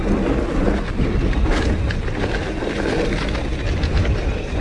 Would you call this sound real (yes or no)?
yes